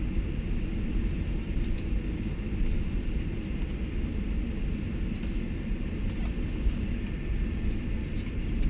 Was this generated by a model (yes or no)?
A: no